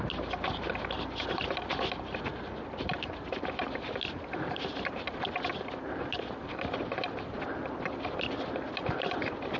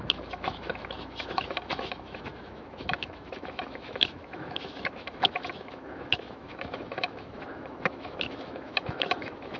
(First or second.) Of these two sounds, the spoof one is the second